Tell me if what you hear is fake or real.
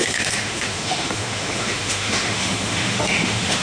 fake